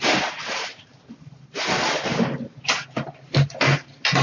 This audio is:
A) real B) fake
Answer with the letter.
A